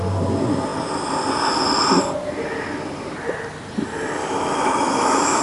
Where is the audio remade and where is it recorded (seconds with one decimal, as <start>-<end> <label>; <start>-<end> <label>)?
0.0-4.2 recorded; 4.2-5.4 remade